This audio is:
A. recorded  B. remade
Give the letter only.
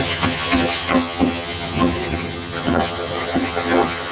B